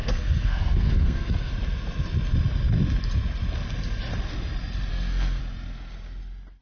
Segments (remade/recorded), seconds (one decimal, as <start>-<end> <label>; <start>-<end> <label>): 0.0-1.5 remade; 1.5-4.9 recorded; 4.9-5.4 remade; 5.4-6.6 recorded